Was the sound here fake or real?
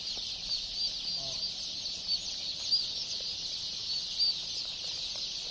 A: real